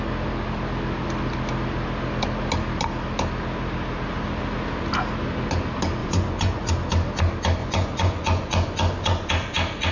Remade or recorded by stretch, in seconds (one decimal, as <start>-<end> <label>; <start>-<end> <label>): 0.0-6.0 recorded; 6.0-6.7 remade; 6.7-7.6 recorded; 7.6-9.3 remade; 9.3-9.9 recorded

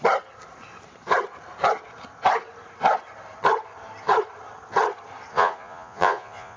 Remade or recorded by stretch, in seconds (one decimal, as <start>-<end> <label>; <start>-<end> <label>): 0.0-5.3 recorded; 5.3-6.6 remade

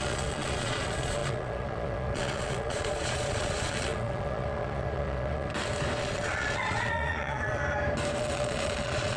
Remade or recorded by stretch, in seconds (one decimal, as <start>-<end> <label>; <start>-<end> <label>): 0.0-5.5 remade; 5.5-6.0 recorded; 6.0-7.6 remade; 7.6-8.2 recorded; 8.2-9.2 remade

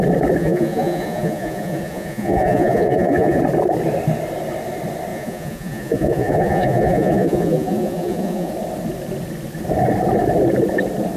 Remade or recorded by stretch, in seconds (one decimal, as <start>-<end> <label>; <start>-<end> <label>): 0.0-0.4 recorded; 0.4-3.4 remade; 3.4-5.1 recorded; 5.1-8.5 remade; 8.5-11.2 recorded

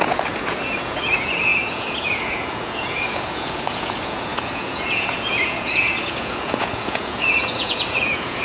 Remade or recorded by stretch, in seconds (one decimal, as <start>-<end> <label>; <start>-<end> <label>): 0.0-8.4 remade